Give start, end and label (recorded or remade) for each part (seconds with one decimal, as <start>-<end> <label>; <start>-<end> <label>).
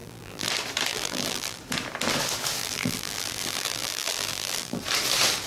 0.0-0.5 remade; 0.5-0.9 recorded; 0.9-1.6 remade; 1.6-2.6 recorded; 2.6-4.8 remade; 4.8-5.5 recorded